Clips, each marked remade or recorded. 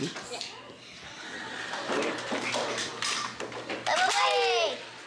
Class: recorded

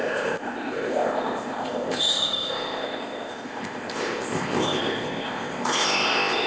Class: remade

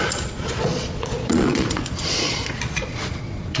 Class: remade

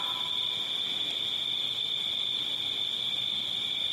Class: recorded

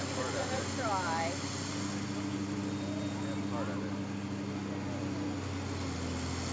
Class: recorded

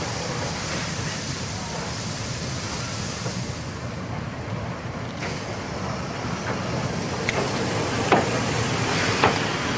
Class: recorded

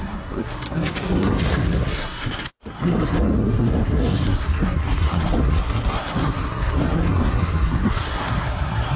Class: remade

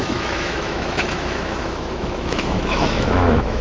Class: remade